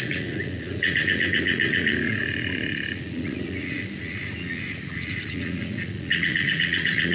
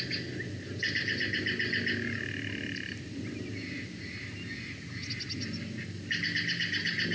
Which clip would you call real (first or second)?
second